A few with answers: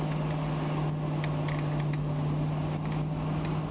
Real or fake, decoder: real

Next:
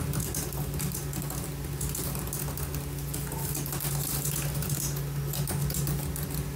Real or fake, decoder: real